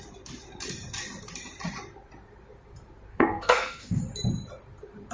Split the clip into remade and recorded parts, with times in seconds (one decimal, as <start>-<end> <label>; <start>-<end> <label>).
0.0-3.1 recorded; 3.1-4.0 remade; 4.0-5.1 recorded